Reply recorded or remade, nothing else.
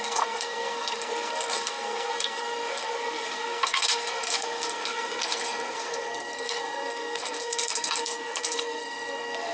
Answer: remade